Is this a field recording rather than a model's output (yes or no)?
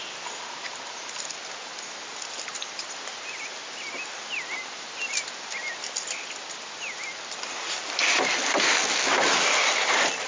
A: yes